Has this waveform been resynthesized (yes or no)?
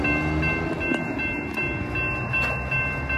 no